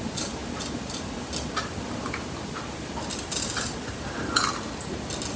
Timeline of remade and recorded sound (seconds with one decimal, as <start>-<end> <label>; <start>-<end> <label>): 0.0-5.4 recorded